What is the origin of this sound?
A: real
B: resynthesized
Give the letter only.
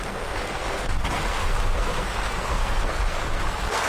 B